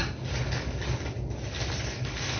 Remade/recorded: recorded